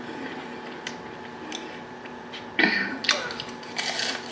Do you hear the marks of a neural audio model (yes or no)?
no